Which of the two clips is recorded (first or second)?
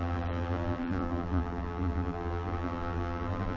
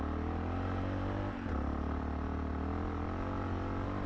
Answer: second